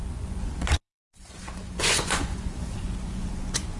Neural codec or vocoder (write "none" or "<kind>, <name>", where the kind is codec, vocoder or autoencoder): vocoder, Vocos